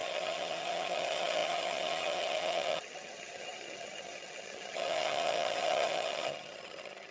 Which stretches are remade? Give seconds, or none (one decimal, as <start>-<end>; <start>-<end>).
0.0-7.1